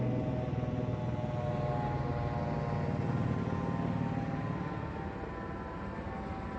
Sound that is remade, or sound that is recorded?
recorded